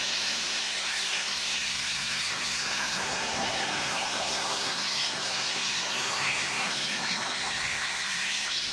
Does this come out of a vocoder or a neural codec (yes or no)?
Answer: yes